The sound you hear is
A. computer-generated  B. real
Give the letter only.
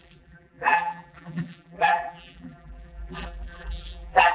A